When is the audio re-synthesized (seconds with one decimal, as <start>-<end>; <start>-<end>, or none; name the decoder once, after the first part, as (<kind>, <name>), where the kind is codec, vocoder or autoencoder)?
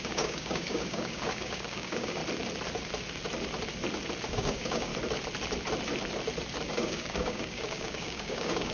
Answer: 0.0-2.2 (codec, DAC); 4.3-4.9; 6.7-8.7